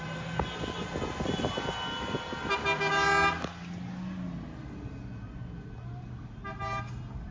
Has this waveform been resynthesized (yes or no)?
no